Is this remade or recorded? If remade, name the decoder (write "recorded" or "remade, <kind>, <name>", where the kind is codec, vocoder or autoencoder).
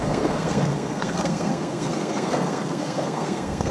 remade, codec, SNAC